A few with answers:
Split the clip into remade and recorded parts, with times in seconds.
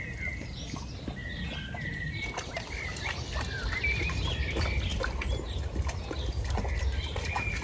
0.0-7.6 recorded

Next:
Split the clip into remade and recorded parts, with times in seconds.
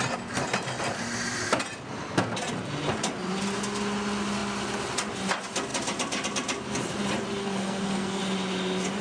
0.0-7.4 recorded; 7.4-8.2 remade; 8.2-9.0 recorded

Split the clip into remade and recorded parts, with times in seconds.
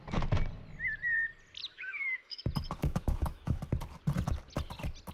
0.0-1.7 recorded; 1.7-2.4 remade; 2.4-2.8 recorded; 2.8-3.6 remade; 3.6-5.1 recorded